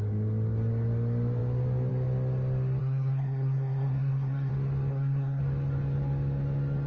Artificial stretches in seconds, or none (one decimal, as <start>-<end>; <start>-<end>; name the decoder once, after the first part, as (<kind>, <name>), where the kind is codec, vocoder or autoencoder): 2.8-4.5 (codec, SNAC); 4.9-5.4